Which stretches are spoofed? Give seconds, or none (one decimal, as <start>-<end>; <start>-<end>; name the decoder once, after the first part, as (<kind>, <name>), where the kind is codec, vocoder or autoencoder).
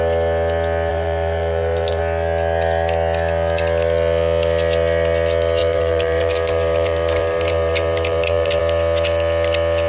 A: 0.9-2.0 (vocoder, BigVGAN v2); 5.6-8.6